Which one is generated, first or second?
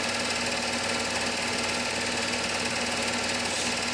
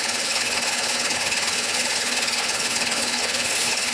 second